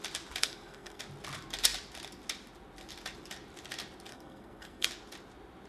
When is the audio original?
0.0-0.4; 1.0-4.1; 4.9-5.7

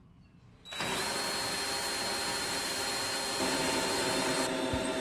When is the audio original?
0.0-2.3; 2.9-5.0

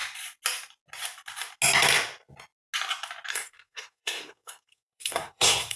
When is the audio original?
0.0-3.3

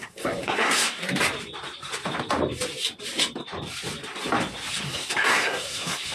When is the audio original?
1.0-4.7